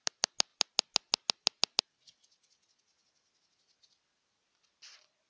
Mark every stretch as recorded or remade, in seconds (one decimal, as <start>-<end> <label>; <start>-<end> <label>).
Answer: 0.0-5.3 recorded